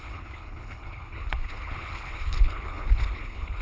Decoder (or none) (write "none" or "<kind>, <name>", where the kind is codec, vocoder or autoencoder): codec, HILCodec